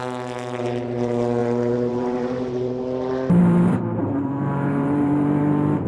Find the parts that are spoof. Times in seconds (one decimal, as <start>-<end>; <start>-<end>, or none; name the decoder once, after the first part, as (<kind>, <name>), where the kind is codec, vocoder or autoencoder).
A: 1.4-2.8 (vocoder, BigVGAN v2); 3.4-5.9